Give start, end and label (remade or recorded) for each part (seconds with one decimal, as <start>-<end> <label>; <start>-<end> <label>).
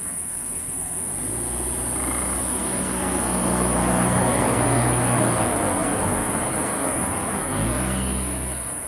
0.0-1.1 remade; 1.1-2.4 recorded; 2.4-8.9 remade